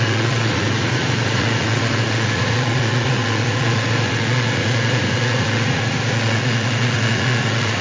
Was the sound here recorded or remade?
remade